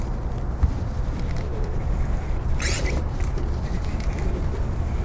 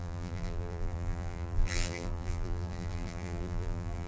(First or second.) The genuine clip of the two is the first